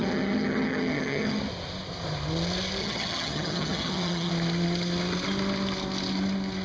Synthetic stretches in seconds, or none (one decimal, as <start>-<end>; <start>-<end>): 0.0-1.4; 2.8-4.3